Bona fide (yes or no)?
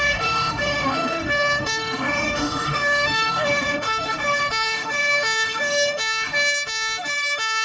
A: no